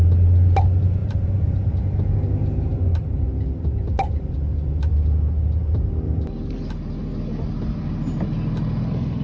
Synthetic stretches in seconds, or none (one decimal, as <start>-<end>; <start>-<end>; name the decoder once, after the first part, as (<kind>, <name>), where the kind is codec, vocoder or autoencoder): 1.0-1.7 (vocoder, BigVGAN v2)